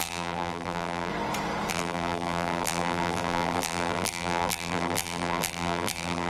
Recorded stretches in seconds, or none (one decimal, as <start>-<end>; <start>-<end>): 1.1-1.7